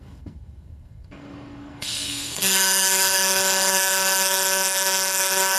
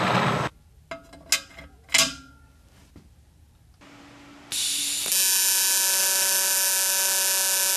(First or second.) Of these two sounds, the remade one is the first